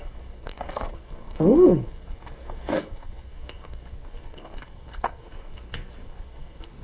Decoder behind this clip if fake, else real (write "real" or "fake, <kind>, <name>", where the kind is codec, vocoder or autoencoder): fake, codec, SNAC